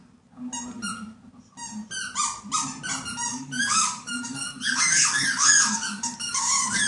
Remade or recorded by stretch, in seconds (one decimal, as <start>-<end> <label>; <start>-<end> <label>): 0.0-3.3 recorded; 3.3-6.9 remade